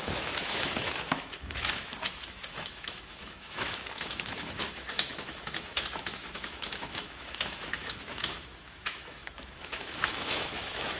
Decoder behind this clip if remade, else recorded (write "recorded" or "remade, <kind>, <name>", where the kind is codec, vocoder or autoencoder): remade, autoencoder, DAC-VAE